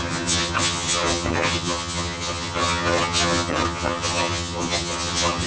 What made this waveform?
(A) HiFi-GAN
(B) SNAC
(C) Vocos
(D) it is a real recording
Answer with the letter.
A